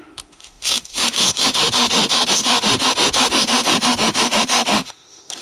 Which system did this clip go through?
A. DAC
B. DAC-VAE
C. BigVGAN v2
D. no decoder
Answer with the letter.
B